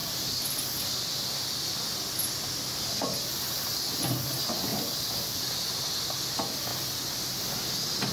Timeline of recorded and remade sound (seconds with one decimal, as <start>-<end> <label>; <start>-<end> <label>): 0.0-1.7 remade; 1.7-4.7 recorded; 4.7-6.2 remade; 6.2-8.1 recorded